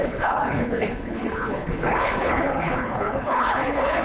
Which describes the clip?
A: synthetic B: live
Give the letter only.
A